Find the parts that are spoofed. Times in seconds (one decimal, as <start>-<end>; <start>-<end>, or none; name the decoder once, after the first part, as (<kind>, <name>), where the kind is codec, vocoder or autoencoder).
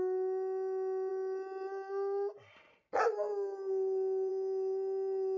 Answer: none